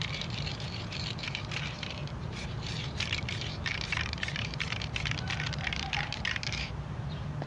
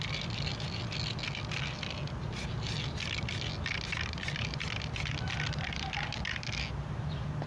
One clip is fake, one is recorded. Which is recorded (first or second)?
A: second